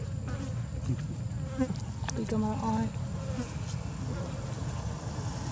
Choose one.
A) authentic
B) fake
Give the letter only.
A